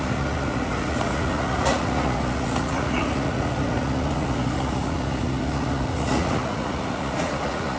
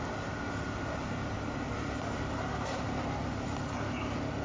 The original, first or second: second